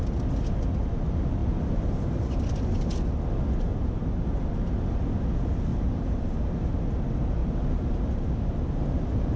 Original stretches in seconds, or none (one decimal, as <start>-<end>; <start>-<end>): 0.0-1.4; 2.2-3.7; 4.5-5.7; 6.7-7.4

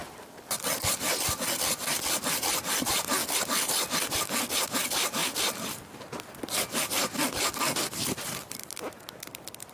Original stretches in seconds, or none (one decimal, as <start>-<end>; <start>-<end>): 0.0-9.7

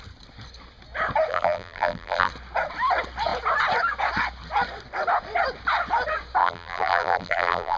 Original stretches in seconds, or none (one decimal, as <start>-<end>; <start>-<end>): 0.0-1.3; 2.3-6.4

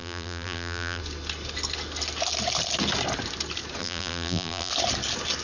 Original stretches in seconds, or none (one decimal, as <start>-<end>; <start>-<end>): 1.0-3.8; 4.7-5.4

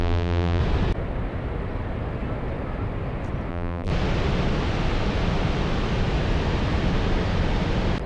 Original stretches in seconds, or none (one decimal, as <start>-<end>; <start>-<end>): 0.6-3.5; 3.9-8.1

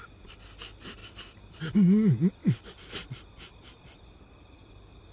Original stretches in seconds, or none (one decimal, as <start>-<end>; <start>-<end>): 0.0-1.0; 1.6-2.4

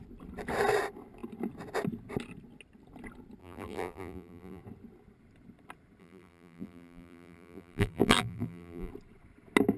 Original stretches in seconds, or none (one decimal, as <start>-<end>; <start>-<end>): 0.0-3.4; 4.6-6.0; 8.9-9.8

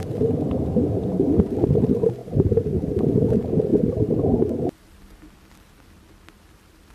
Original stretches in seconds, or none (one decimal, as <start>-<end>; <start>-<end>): 2.2-2.9; 3.7-4.6